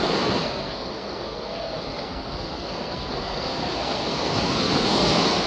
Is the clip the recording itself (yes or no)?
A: no